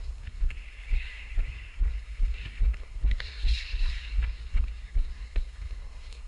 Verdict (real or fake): fake